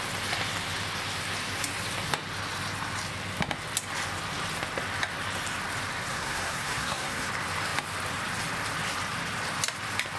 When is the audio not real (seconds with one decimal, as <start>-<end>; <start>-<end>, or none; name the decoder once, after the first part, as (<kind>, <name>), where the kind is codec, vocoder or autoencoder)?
6.1-7.3 (codec, SNAC)